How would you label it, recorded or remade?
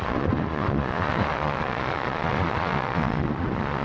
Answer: remade